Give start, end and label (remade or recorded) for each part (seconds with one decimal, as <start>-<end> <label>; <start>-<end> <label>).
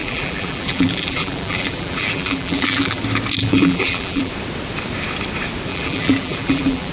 0.0-3.0 remade; 3.0-3.4 recorded; 3.4-4.3 remade; 4.3-5.7 recorded; 5.7-6.9 remade